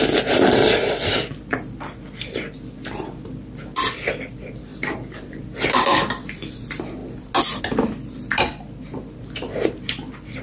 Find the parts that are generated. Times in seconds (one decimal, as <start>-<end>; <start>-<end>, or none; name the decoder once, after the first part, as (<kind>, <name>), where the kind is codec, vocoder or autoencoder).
0.0-4.7 (vocoder, BigVGAN v2); 5.3-7.0; 7.6-10.4